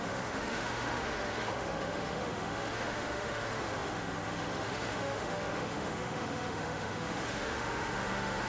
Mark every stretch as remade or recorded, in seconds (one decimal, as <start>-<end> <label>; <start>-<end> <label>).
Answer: 0.0-8.5 remade